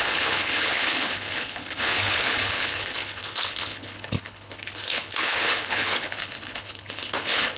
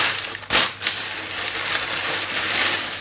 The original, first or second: second